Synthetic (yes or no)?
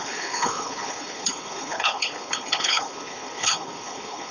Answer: yes